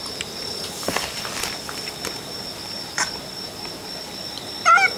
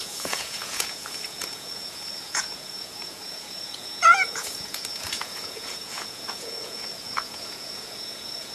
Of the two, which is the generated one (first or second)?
second